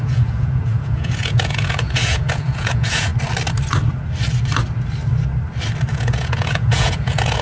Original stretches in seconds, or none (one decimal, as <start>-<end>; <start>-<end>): 3.1-5.9